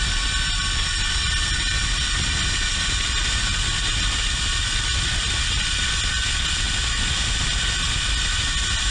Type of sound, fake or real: real